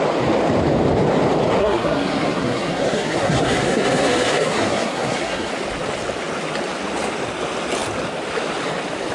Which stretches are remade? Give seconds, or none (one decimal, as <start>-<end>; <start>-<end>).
1.6-5.5